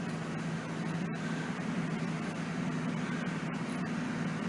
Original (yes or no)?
yes